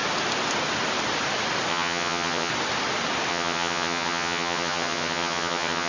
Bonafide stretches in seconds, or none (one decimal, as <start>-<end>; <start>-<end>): 0.0-1.7; 2.5-3.3